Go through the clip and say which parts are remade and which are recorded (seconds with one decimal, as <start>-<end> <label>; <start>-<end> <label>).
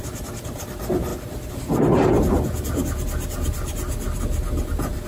0.0-0.6 remade; 0.6-5.1 recorded